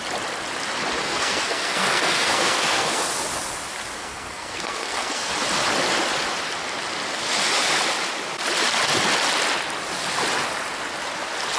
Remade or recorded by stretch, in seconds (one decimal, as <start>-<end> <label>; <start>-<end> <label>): 0.0-1.0 recorded; 1.0-3.0 remade; 3.0-4.0 recorded; 4.0-5.3 remade; 5.3-11.6 recorded